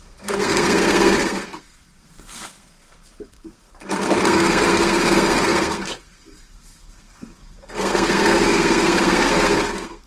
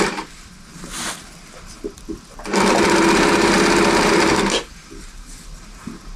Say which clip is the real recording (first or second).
second